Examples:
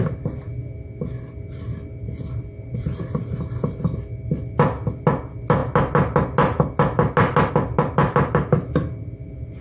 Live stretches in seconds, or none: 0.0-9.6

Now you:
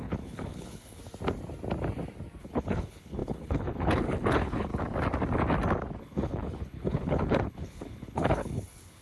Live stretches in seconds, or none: 1.0-2.4; 4.7-6.0

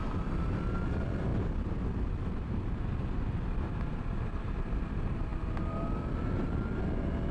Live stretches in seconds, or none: 5.3-6.2

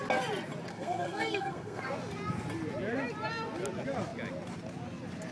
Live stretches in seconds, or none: 0.0-0.7; 1.8-5.3

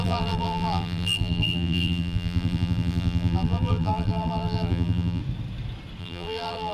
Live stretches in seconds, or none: 5.2-6.0

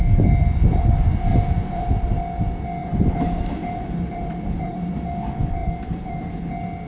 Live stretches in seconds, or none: 0.0-1.3; 1.9-2.8; 4.9-5.6; 6.3-6.9